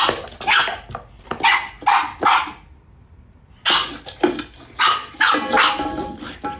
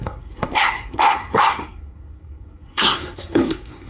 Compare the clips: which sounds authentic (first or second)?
first